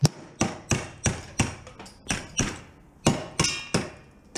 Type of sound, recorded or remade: recorded